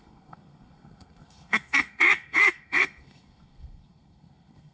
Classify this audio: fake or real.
fake